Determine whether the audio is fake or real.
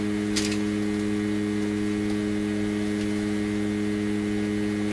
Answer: real